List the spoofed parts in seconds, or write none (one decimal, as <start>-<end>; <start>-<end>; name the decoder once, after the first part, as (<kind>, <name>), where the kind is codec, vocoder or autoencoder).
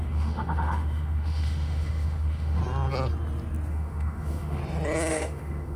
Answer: 0.0-2.6 (autoencoder, DAC-VAE); 3.7-4.6; 5.1-5.8